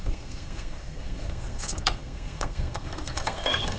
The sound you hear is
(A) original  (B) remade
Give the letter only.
B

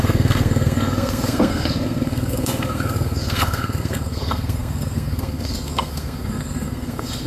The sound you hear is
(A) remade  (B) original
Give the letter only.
A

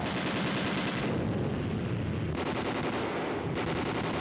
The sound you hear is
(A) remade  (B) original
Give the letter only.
B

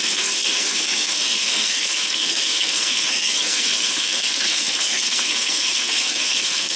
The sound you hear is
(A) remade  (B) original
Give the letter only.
A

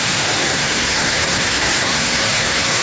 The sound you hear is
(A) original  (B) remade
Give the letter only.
B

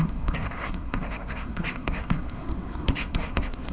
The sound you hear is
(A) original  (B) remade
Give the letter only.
B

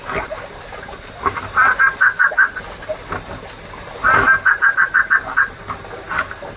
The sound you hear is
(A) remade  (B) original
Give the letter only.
B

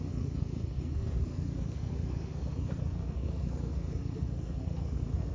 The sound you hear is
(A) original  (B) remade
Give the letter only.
B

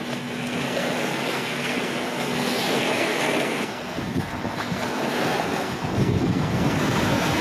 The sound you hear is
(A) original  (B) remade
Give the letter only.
B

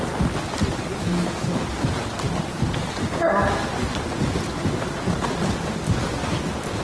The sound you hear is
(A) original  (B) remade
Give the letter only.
A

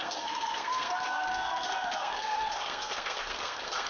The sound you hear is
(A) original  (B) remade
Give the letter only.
B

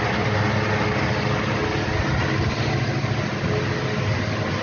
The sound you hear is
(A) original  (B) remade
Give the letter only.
A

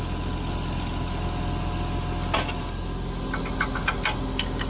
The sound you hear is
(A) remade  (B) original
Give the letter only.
B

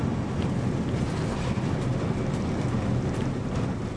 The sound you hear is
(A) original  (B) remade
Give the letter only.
A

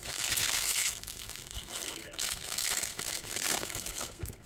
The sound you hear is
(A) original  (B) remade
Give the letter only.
B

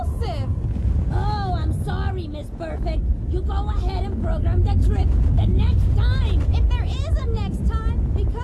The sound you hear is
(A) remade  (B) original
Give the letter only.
B